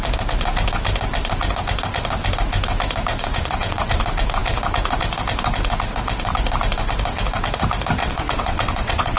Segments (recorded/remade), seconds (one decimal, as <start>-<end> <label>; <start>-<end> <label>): 0.0-3.1 recorded; 3.1-4.0 remade; 4.0-8.0 recorded; 8.0-9.2 remade